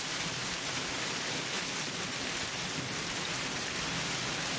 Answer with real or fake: real